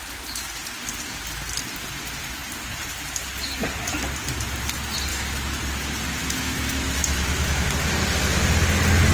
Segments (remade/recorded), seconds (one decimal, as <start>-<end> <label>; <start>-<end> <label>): 0.0-5.1 recorded; 5.1-5.6 remade; 5.6-6.2 recorded; 6.2-7.7 remade; 7.7-9.1 recorded